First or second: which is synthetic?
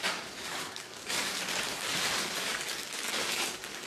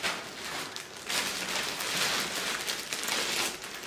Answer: first